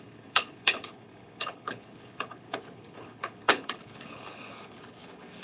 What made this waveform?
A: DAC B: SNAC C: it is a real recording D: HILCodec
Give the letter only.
D